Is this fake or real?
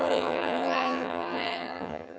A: fake